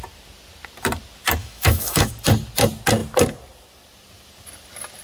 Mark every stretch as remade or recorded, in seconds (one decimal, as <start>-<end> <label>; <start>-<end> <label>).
0.0-1.4 recorded; 1.4-2.1 remade; 2.1-5.0 recorded